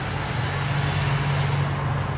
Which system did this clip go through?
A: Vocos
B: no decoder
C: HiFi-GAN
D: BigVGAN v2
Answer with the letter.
B